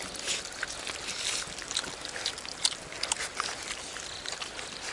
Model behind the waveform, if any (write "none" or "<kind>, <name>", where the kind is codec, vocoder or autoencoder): none